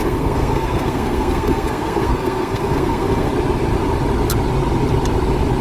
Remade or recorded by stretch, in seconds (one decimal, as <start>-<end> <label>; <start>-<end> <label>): 0.0-3.3 remade; 3.3-5.6 recorded